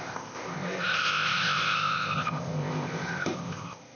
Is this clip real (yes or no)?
no